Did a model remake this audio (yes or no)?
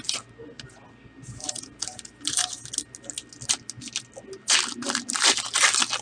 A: no